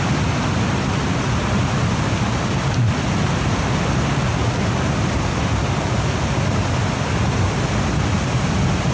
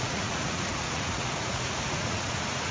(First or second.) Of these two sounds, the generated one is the second